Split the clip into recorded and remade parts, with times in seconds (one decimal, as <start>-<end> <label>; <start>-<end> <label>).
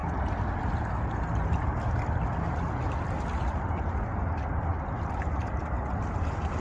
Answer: 0.0-4.7 recorded; 4.7-5.6 remade; 5.6-6.6 recorded